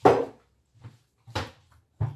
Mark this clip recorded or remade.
recorded